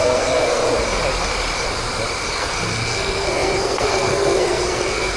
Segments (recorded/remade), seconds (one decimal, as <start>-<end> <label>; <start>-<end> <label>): 0.0-0.6 remade; 0.6-2.3 recorded; 2.3-5.2 remade